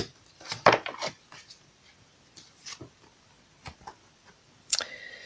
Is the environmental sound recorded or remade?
remade